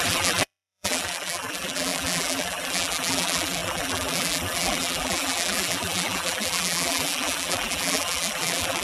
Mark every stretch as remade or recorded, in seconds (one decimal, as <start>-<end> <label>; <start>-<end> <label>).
0.0-8.8 remade